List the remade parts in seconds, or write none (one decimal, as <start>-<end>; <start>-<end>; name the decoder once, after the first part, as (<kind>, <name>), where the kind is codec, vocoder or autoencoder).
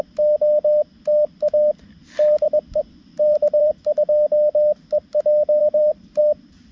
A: 2.0-3.8 (vocoder, BigVGAN v2); 5.6-6.2